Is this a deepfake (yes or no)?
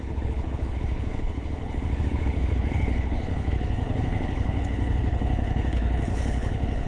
yes